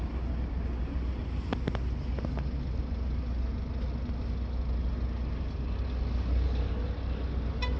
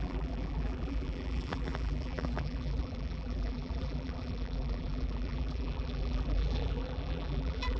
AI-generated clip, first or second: second